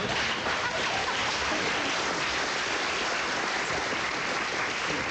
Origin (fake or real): real